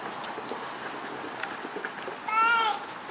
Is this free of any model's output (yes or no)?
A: yes